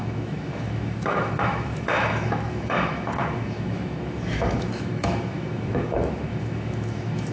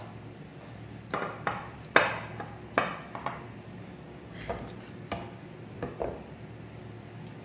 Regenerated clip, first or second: first